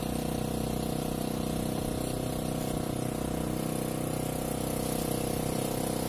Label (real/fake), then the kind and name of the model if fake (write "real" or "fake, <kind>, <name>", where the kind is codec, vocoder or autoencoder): real